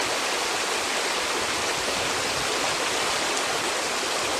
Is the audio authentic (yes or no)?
yes